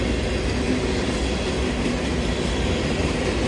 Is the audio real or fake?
real